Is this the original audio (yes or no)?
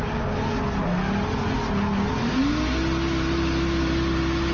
yes